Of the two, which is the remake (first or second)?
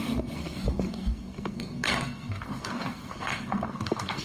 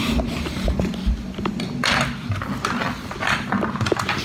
first